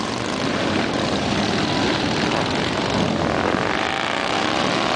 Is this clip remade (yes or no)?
no